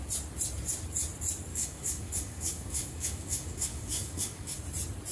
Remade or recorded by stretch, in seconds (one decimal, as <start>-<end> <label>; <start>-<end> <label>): 0.0-1.5 recorded; 1.5-4.6 remade; 4.6-5.1 recorded